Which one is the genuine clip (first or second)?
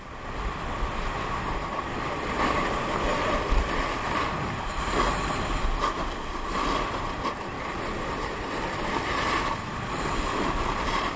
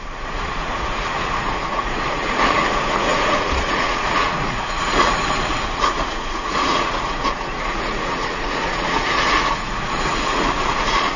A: first